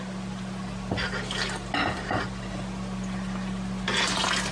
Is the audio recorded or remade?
recorded